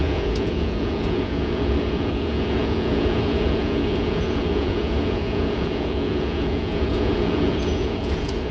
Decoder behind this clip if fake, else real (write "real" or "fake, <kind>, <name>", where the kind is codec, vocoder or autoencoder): fake, vocoder, Vocos